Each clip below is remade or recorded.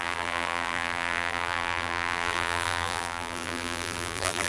remade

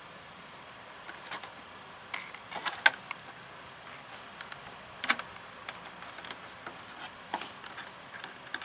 recorded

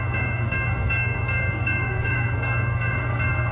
remade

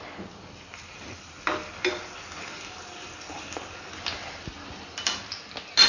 recorded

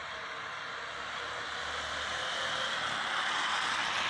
recorded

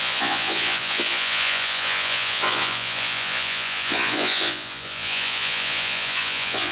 remade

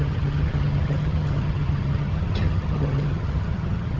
remade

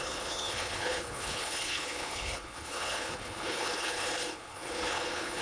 remade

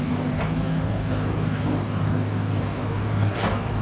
remade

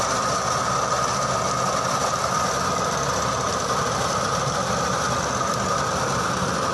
recorded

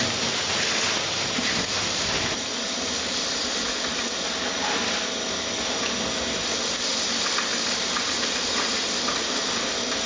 recorded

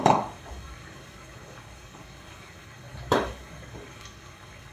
remade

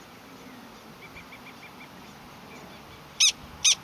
recorded